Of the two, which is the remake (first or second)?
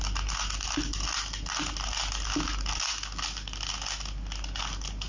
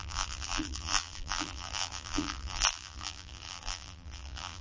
second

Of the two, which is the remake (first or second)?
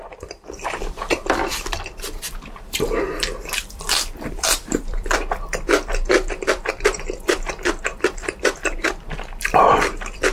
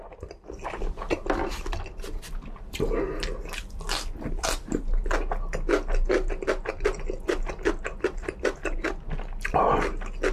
first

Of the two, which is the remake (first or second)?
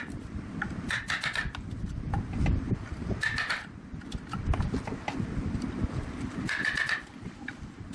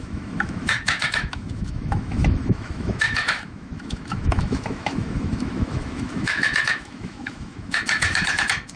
second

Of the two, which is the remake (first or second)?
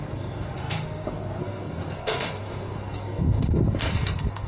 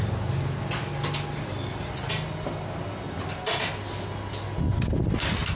first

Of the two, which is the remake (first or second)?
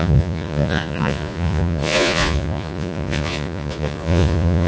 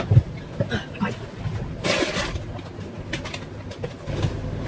first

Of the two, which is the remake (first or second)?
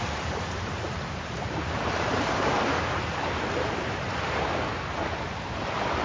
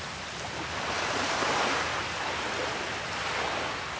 first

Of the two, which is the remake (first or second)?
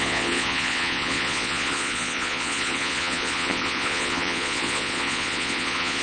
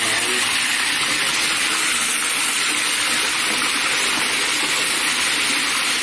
first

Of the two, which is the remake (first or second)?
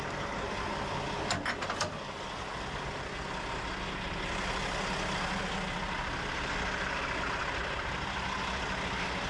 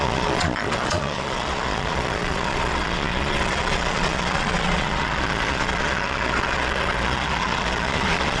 second